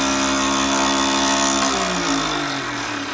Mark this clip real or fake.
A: real